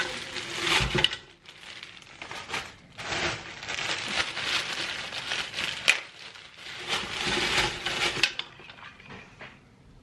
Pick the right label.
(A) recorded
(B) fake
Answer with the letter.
A